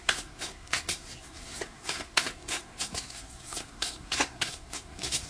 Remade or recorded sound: remade